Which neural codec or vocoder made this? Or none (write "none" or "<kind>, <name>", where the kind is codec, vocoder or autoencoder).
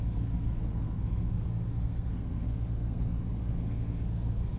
codec, SNAC